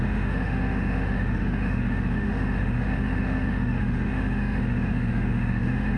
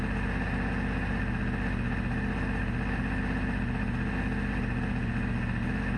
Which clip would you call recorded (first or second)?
second